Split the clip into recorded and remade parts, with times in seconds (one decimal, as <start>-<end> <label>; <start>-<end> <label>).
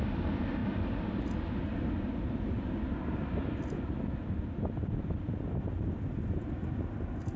0.0-7.4 recorded